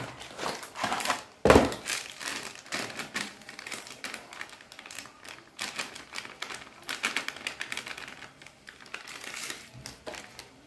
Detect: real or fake fake